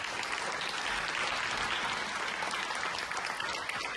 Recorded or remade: recorded